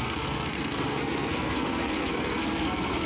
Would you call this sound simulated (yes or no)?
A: yes